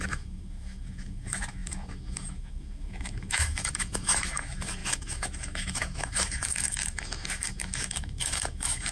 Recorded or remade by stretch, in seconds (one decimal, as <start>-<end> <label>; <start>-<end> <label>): 0.0-8.9 remade

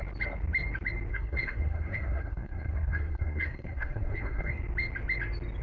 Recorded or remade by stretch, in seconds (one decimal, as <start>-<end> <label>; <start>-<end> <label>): 0.0-1.1 recorded; 1.1-4.5 remade; 4.5-5.6 recorded

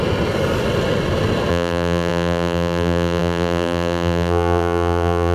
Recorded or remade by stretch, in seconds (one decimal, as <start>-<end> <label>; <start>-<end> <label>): 0.0-1.5 recorded; 1.5-5.3 remade

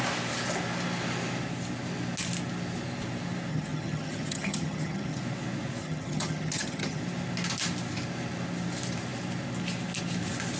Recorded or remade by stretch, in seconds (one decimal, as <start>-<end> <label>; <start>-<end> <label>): 0.0-3.5 recorded; 3.5-5.2 remade; 5.2-5.8 recorded; 5.8-7.0 remade; 7.0-10.6 recorded

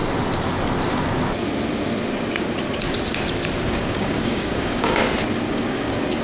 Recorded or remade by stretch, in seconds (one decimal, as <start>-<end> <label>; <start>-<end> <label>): 0.0-3.7 recorded; 3.7-5.0 remade; 5.0-5.5 recorded; 5.5-6.2 remade